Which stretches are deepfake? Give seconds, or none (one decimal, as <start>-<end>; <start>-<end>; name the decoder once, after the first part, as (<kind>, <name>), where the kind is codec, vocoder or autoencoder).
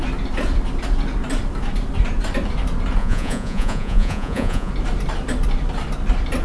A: 3.0-4.7 (vocoder, Vocos)